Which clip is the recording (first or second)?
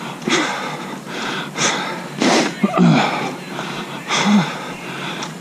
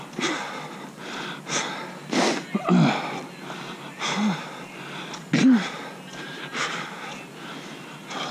second